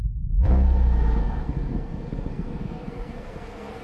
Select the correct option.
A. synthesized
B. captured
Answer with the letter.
A